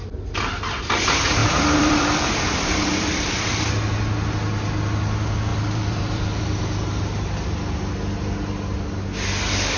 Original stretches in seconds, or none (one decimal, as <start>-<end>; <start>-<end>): 0.0-1.4; 3.3-5.5; 6.6-9.8